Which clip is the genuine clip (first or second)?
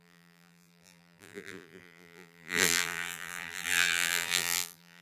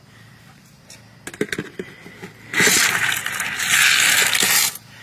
second